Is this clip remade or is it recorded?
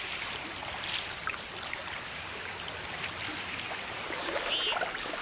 recorded